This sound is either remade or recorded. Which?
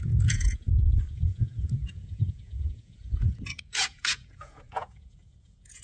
remade